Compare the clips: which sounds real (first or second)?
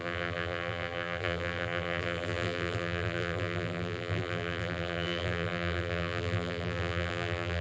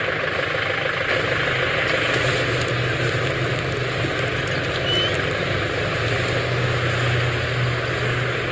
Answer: second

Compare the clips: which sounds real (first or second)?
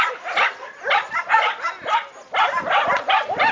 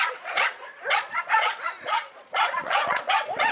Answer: first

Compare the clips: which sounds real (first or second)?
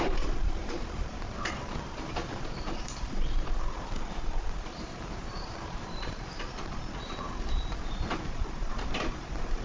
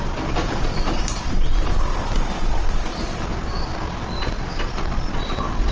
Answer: second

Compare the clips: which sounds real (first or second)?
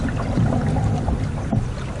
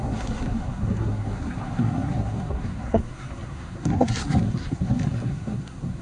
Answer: first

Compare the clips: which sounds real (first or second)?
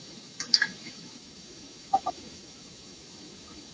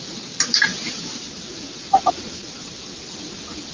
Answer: second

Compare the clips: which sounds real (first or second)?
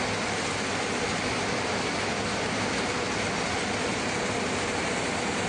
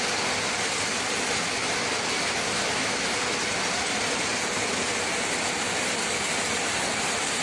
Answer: first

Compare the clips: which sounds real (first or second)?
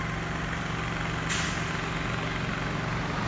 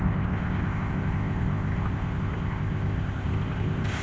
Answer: first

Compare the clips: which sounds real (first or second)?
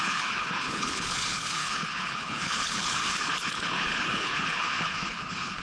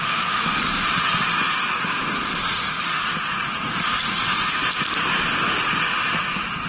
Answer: second